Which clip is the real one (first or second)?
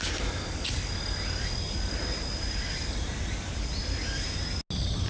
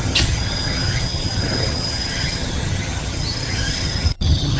first